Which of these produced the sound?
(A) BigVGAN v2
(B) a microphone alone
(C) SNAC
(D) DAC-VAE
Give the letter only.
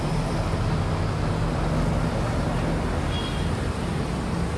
B